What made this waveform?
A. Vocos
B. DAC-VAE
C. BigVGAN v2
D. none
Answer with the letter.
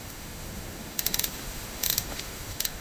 B